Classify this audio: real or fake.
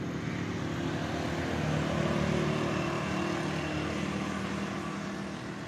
real